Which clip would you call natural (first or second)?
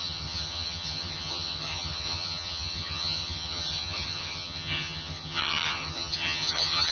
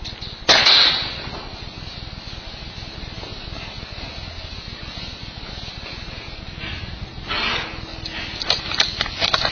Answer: second